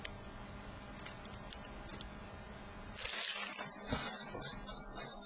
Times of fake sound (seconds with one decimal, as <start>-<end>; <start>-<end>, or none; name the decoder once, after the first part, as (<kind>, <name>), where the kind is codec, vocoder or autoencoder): none